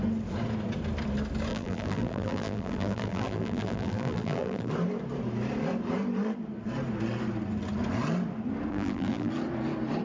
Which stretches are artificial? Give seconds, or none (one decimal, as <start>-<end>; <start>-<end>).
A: 1.5-4.7; 8.7-9.3